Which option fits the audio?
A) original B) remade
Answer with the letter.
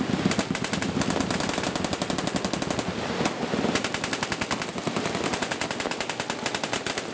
A